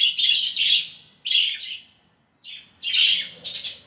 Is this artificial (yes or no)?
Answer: no